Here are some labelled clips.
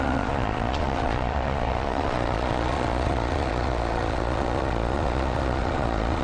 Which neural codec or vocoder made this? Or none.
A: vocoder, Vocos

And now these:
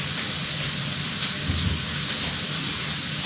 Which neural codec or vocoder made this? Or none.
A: vocoder, BigVGAN v2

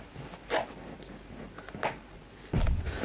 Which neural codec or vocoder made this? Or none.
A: vocoder, BigVGAN v2